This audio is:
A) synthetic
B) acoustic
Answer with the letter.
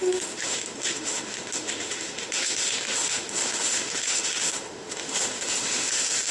A